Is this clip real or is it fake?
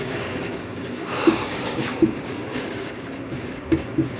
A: fake